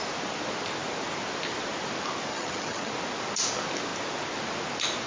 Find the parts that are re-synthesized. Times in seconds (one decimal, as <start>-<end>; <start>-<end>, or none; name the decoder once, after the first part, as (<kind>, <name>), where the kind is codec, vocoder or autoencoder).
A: 2.3-2.9 (vocoder, HiFi-GAN)